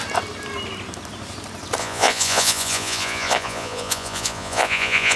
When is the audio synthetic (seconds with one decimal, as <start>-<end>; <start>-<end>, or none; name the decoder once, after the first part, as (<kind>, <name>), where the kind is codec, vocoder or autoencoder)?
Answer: 1.8-5.2 (vocoder, Vocos)